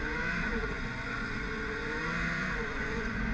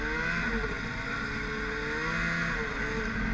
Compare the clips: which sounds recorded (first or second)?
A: second